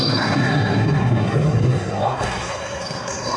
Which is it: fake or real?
fake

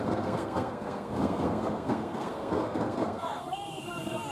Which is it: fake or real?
fake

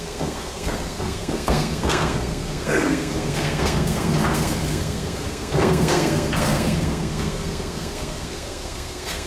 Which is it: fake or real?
fake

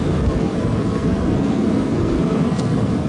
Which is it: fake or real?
fake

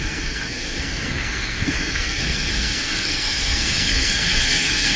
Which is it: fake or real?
fake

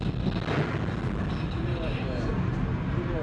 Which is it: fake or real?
real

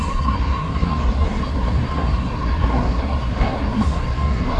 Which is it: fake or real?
fake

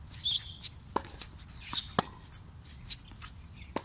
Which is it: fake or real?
real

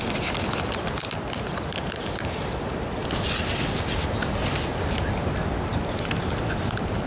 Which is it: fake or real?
real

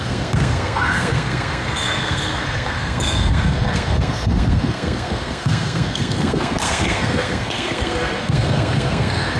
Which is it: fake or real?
fake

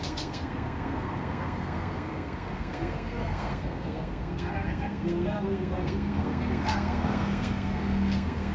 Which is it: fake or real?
fake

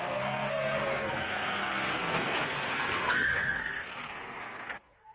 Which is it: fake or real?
fake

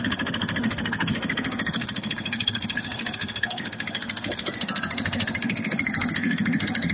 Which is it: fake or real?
fake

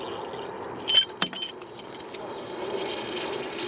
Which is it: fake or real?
real